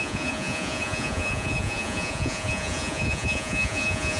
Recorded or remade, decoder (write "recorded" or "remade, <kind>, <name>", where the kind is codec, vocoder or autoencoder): remade, vocoder, Vocos